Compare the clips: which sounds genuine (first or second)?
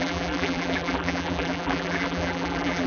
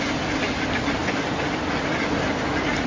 second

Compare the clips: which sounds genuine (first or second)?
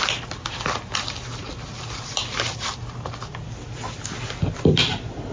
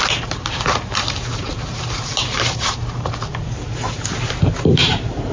first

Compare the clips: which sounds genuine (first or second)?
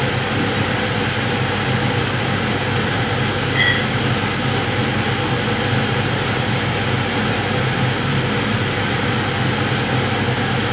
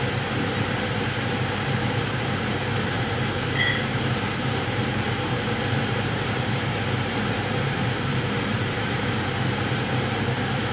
first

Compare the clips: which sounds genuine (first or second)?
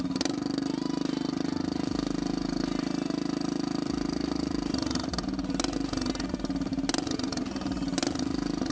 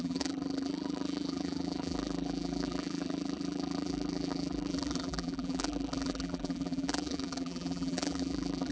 first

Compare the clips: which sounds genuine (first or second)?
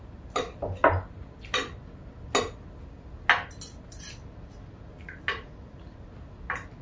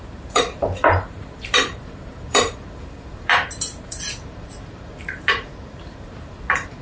first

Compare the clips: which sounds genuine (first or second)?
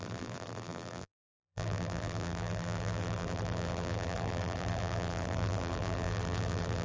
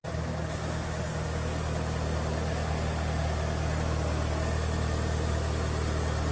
second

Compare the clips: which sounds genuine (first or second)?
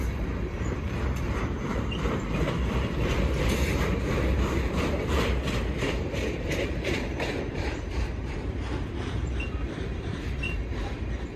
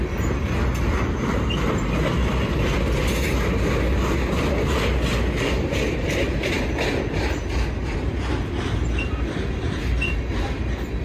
second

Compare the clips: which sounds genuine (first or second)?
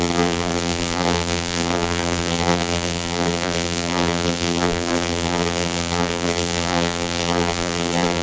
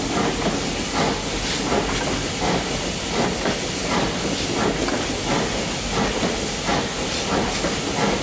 second